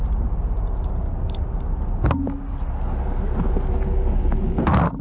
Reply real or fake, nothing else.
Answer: real